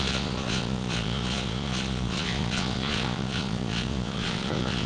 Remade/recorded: remade